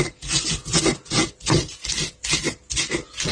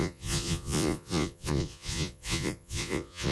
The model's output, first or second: second